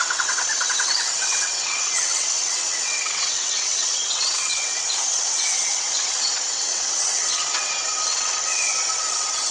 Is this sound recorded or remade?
remade